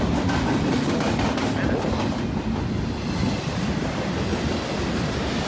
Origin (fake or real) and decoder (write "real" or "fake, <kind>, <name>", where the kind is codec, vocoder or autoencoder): real